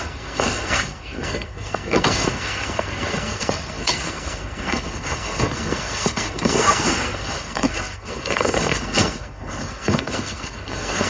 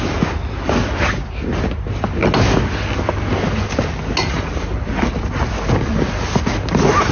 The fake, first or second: first